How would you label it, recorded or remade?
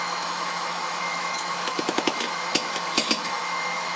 remade